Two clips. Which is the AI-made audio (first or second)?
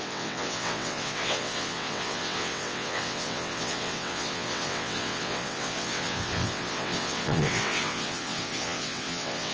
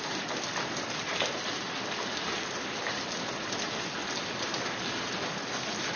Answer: first